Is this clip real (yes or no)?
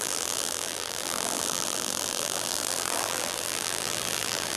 no